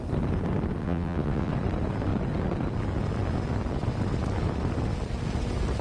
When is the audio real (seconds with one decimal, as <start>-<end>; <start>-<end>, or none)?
0.0-0.8; 1.5-5.8